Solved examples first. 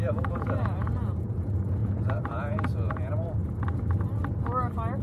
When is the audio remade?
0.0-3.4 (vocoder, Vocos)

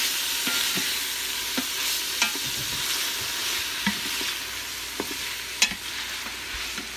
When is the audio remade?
none

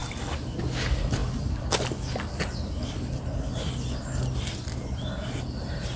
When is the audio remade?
none

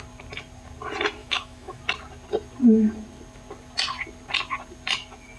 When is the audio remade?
1.2-1.8 (autoencoder, DAC-VAE)

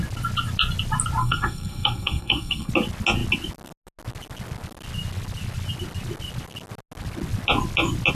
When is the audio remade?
1.2-2.7 (codec, SNAC)